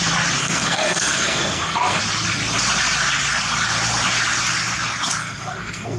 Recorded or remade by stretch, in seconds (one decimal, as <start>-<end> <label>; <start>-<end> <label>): 0.0-0.4 recorded; 0.4-2.0 remade; 2.0-5.2 recorded; 5.2-6.0 remade

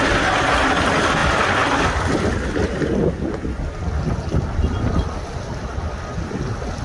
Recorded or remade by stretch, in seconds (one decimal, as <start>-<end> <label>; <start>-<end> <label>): 0.0-6.8 recorded

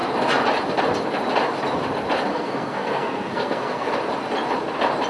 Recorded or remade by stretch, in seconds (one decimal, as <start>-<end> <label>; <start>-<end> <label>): 0.0-2.3 recorded; 2.3-3.9 remade; 3.9-5.1 recorded